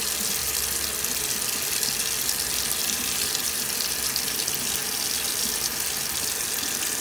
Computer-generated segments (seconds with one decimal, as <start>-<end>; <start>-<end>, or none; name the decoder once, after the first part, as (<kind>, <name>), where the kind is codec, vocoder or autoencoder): 2.8-4.0 (vocoder, BigVGAN v2)